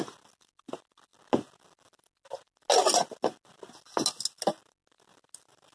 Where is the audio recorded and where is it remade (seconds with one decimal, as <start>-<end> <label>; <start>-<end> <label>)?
0.0-5.7 recorded